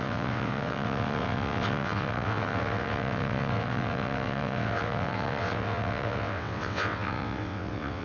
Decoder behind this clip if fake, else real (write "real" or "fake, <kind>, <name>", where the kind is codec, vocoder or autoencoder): fake, vocoder, WaveNeXt